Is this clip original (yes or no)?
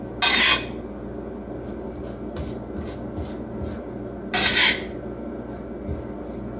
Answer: yes